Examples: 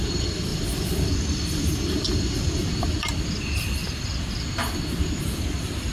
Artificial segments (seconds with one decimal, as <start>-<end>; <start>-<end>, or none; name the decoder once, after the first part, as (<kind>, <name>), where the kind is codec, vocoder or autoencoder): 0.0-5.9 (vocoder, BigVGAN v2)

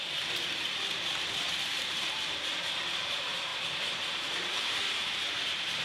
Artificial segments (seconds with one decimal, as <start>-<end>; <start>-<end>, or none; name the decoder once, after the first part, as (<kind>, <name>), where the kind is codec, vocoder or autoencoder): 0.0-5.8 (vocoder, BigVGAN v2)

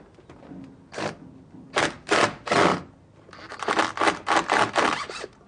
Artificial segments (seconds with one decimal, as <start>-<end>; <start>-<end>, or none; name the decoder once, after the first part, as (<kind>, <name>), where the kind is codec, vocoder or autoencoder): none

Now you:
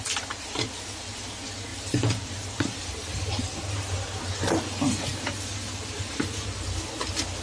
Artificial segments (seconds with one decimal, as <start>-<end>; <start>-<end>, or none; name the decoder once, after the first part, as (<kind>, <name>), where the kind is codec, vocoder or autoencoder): 1.7-4.2 (vocoder, BigVGAN v2); 5.1-6.0

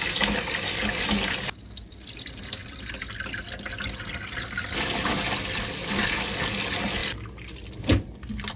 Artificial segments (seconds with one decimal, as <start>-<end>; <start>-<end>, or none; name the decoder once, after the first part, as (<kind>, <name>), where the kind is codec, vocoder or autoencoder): none

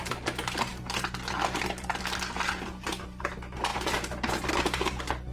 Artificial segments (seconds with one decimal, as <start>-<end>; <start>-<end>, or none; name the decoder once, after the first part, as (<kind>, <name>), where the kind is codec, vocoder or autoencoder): 3.7-4.5 (vocoder, BigVGAN v2)

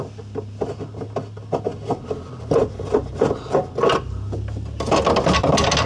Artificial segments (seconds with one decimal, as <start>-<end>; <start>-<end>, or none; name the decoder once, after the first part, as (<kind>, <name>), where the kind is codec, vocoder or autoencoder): none

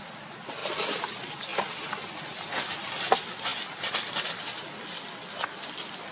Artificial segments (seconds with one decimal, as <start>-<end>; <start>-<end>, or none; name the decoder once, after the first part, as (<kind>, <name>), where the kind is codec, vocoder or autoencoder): 0.6-1.1 (vocoder, BigVGAN v2)